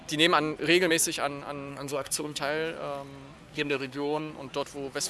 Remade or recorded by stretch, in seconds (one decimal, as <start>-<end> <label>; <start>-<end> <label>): 0.0-1.7 recorded; 1.7-2.4 remade; 2.4-3.4 recorded; 3.4-4.3 remade; 4.3-5.1 recorded